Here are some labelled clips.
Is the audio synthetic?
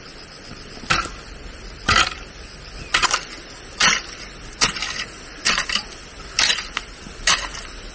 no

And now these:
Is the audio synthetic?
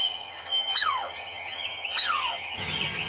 yes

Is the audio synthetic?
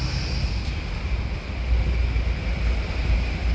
no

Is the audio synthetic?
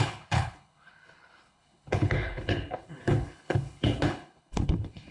yes